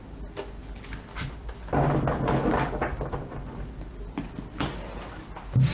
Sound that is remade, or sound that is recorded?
recorded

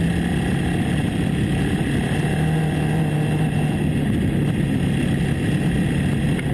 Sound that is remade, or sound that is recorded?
recorded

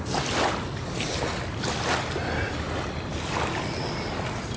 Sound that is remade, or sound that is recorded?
recorded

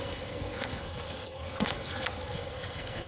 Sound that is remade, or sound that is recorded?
remade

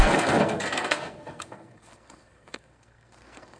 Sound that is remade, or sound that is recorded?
remade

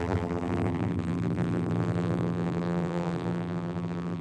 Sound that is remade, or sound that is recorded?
remade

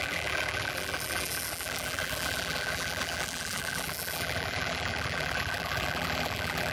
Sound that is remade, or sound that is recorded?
remade